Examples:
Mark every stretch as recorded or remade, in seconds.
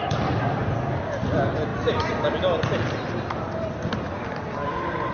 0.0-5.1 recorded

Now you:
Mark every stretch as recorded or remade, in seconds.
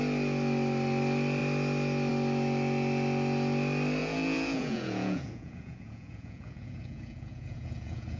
0.0-4.0 recorded; 4.0-8.2 remade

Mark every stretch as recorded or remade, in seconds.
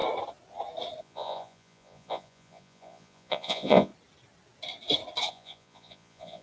0.0-1.0 recorded; 1.0-3.9 remade; 3.9-5.3 recorded; 5.3-6.4 remade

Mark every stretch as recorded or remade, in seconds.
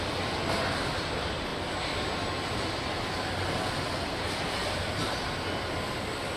0.0-6.4 recorded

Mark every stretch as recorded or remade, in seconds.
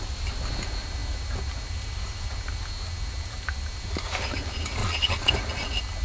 0.0-4.8 recorded; 4.8-5.3 remade; 5.3-6.0 recorded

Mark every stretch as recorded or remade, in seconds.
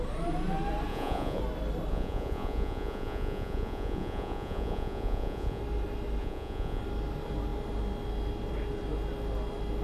0.0-0.9 recorded; 0.9-1.4 remade; 1.4-1.9 recorded; 1.9-5.6 remade; 5.6-6.2 recorded; 6.2-6.8 remade; 6.8-9.8 recorded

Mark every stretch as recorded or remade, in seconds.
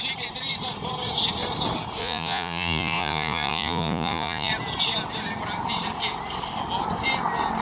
0.0-2.0 recorded; 2.0-4.5 remade; 4.5-7.6 recorded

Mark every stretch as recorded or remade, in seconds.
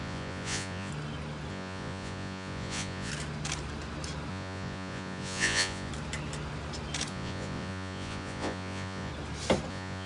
0.0-0.9 remade; 0.9-1.5 recorded; 1.5-3.1 remade; 3.1-4.3 recorded; 4.3-5.9 remade; 5.9-7.1 recorded; 7.1-9.1 remade; 9.1-9.7 recorded; 9.7-10.1 remade